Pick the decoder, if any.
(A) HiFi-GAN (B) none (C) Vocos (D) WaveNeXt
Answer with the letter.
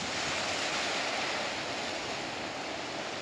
B